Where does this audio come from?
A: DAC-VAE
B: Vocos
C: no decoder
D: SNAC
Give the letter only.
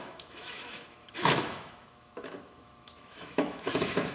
A